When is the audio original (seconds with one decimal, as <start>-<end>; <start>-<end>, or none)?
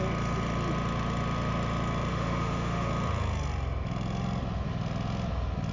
0.0-2.1; 2.9-5.7